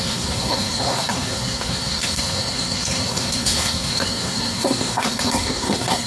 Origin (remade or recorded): remade